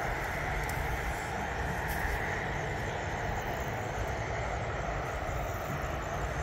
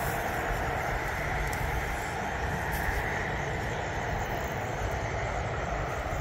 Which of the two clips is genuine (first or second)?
first